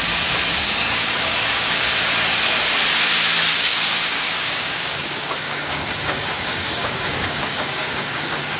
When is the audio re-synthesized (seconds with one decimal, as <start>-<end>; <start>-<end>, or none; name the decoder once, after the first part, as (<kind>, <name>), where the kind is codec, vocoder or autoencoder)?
0.6-1.8 (codec, DAC); 3.5-8.6